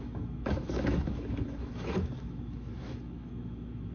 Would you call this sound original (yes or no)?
no